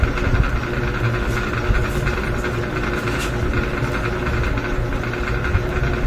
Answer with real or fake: real